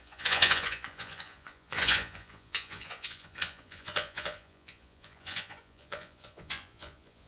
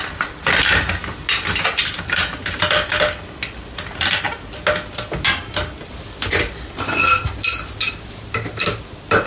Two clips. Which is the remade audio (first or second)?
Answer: first